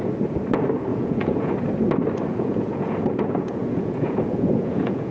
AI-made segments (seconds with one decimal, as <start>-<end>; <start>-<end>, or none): 0.9-1.5; 2.3-5.1